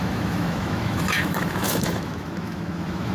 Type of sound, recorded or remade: remade